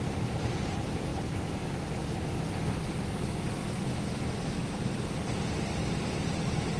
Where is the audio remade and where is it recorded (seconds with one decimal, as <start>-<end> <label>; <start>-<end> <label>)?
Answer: 0.0-1.1 remade; 1.1-2.8 recorded; 2.8-3.6 remade; 3.6-6.8 recorded